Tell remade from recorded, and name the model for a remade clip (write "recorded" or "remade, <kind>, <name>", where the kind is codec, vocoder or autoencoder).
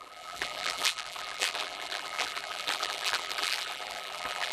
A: remade, vocoder, BigVGAN v2